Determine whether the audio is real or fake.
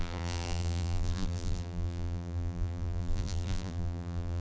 fake